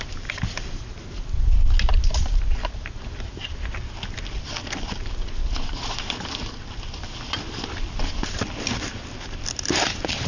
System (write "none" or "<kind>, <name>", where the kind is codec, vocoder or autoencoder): none